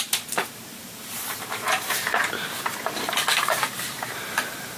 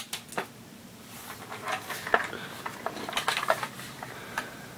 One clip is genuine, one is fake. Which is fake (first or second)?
first